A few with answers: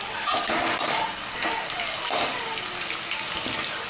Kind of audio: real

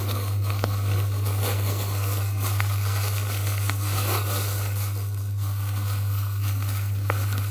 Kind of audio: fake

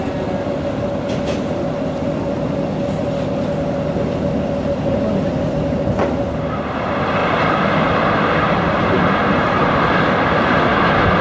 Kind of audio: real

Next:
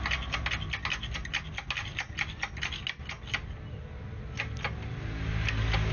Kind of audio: real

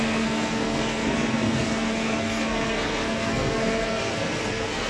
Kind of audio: fake